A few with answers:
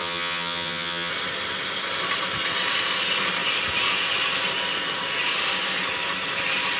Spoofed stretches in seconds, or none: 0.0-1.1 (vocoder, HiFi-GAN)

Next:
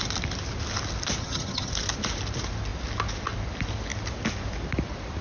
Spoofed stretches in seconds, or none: 1.2-1.7 (vocoder, HiFi-GAN)